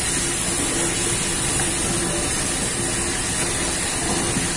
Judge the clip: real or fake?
real